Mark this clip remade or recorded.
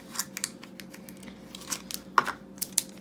recorded